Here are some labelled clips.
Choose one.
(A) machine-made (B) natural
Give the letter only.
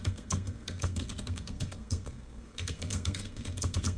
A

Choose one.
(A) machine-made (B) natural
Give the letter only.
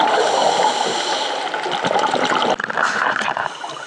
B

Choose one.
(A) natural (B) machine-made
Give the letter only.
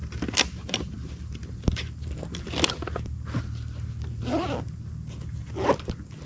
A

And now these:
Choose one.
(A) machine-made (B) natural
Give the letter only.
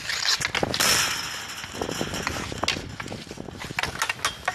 B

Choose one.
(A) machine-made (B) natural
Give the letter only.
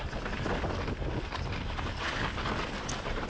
B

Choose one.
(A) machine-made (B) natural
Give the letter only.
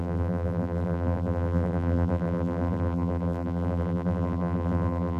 A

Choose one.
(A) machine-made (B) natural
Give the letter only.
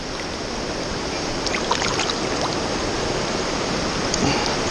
B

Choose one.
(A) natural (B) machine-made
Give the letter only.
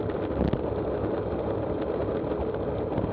A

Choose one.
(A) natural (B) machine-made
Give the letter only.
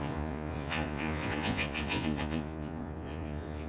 B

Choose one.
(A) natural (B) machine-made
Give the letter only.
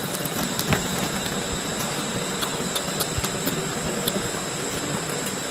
B